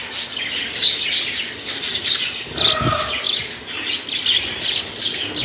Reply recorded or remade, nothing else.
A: recorded